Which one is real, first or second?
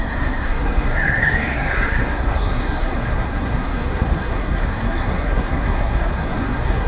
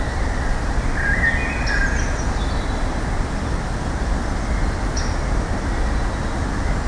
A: second